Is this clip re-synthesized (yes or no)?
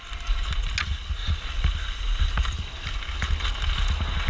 no